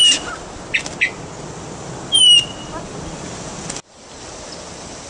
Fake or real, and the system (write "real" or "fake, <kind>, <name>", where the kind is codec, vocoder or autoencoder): real